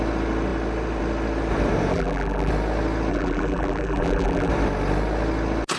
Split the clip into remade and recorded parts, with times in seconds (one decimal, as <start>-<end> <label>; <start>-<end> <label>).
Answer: 0.0-1.9 recorded; 1.9-2.5 remade; 2.5-3.1 recorded; 3.1-4.5 remade; 4.5-5.8 recorded